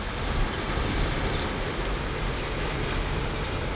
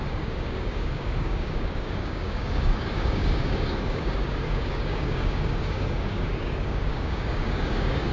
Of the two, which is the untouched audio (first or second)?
first